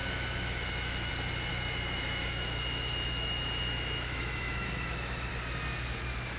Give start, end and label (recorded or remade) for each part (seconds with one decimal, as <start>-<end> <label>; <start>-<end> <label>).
0.0-1.1 remade; 1.1-1.5 recorded; 1.5-5.3 remade; 5.3-6.4 recorded

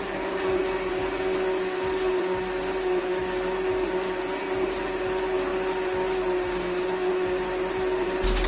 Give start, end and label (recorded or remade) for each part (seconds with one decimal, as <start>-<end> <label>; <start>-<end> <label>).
0.0-8.5 recorded

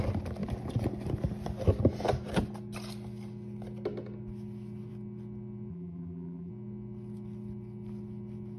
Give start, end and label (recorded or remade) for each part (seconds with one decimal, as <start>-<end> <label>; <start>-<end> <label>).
0.0-5.7 recorded; 5.7-6.5 remade; 6.5-8.6 recorded